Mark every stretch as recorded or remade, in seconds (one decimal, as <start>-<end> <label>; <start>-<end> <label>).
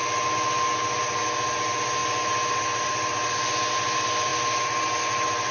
0.0-5.5 recorded